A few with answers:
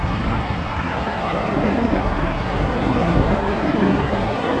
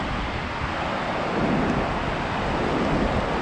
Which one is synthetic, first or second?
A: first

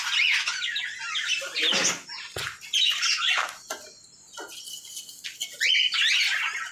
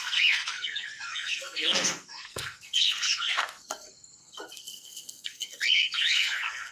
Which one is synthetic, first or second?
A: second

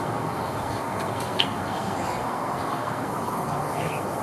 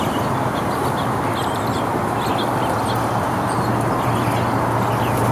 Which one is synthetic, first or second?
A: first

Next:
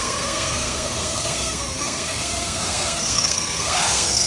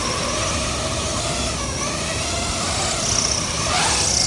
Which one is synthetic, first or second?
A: first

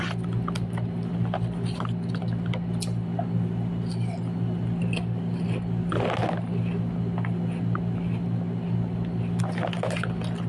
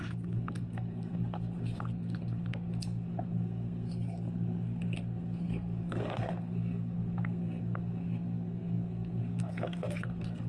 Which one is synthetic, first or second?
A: second